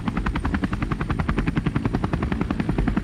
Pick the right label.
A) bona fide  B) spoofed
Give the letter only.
A